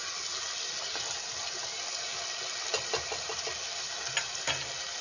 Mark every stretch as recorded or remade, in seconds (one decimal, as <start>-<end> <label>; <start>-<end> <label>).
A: 0.0-5.0 recorded